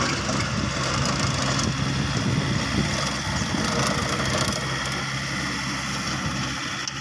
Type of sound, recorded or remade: recorded